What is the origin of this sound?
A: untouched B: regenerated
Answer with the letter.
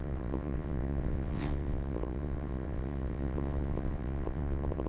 B